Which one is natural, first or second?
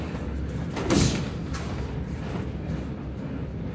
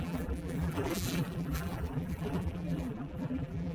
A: first